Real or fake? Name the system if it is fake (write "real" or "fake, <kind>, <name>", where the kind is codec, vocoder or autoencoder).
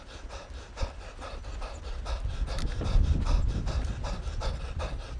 real